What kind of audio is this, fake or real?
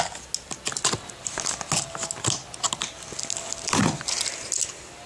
real